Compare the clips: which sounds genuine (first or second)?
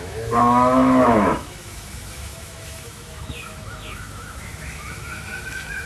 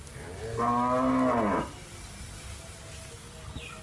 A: second